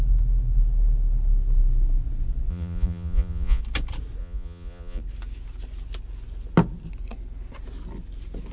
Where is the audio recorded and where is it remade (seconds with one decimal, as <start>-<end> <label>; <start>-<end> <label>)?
0.0-2.5 recorded; 2.5-3.6 remade; 3.6-4.2 recorded; 4.2-5.0 remade; 5.0-8.5 recorded